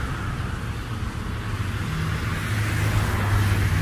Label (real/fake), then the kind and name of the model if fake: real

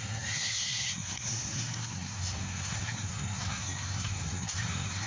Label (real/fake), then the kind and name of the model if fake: fake, codec, SNAC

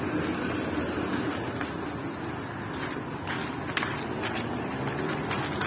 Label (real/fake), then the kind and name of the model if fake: real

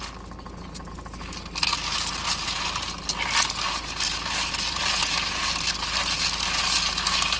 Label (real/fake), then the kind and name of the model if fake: real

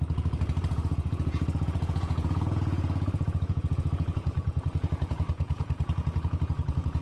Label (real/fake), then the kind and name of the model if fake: fake, vocoder, Vocos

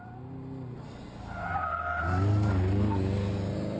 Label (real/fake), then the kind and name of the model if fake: real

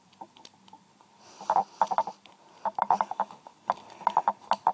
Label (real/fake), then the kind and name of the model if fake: real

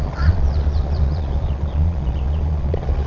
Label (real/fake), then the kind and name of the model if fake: fake, vocoder, Vocos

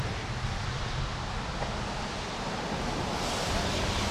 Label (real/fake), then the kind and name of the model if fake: fake, vocoder, BigVGAN v2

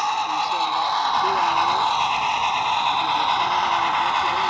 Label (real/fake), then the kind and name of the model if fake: real